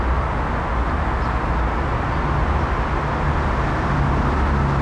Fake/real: real